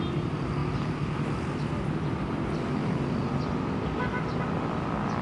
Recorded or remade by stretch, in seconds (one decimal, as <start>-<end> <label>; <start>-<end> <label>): 0.0-5.2 recorded